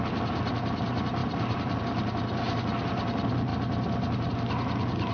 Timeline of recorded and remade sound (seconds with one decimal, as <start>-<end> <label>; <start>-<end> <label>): 0.0-1.2 recorded; 1.2-1.8 remade; 1.8-5.1 recorded